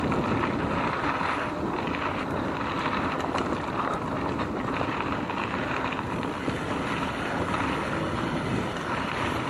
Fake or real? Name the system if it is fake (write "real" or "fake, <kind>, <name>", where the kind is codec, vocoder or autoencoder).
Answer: fake, vocoder, BigVGAN v2